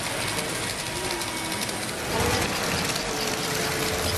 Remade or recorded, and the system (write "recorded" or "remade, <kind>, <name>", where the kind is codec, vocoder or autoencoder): recorded